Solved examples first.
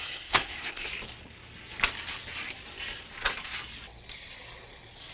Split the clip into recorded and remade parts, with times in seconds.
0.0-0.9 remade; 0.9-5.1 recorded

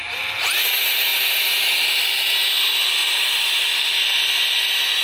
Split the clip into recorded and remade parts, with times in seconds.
0.0-1.1 recorded; 1.1-1.9 remade; 1.9-3.0 recorded; 3.0-4.0 remade; 4.0-5.0 recorded

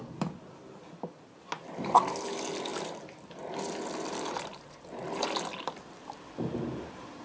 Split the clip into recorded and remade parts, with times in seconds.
0.0-7.2 recorded